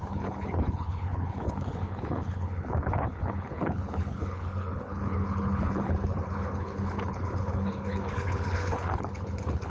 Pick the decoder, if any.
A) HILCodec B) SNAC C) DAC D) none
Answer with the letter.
A